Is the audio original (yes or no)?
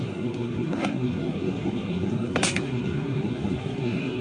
no